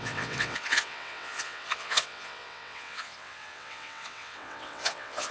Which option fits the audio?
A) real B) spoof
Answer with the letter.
B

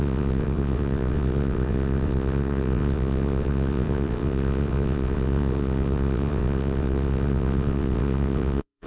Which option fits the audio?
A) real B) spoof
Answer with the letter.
B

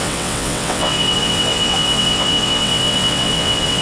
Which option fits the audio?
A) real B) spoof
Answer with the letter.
B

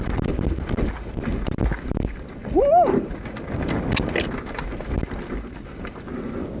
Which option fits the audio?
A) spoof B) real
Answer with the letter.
B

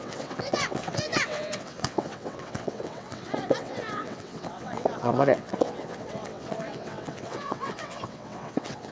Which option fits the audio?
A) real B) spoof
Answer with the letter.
B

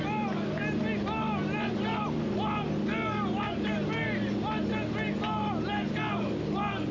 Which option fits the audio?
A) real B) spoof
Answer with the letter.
A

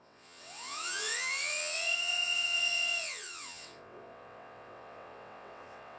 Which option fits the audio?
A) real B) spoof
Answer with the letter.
B